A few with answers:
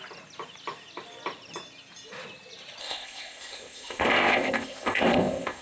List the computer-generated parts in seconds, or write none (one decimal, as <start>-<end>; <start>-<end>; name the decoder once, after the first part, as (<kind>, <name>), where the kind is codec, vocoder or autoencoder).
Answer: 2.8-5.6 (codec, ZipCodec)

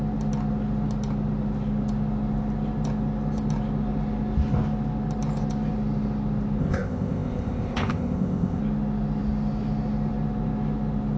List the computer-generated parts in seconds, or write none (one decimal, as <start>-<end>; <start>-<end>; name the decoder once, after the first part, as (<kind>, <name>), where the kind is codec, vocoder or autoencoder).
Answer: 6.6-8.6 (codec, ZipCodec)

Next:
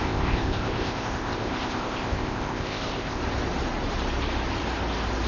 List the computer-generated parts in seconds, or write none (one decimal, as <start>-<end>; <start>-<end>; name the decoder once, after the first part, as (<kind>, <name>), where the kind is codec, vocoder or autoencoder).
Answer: 0.0-3.2 (codec, ZipCodec)